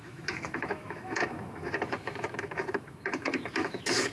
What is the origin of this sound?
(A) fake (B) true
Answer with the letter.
A